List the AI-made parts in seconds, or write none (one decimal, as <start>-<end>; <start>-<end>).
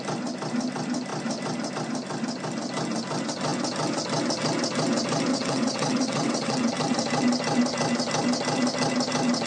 5.3-6.7